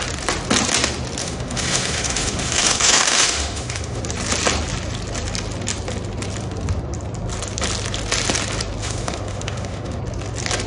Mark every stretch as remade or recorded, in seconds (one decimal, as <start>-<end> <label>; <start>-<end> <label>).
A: 0.0-1.2 recorded; 1.2-4.0 remade; 4.0-8.8 recorded; 8.8-10.0 remade; 10.0-10.7 recorded